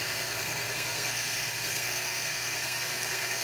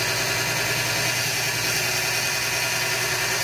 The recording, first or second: second